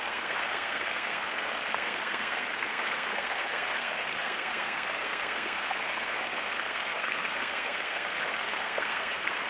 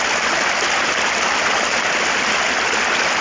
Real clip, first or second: second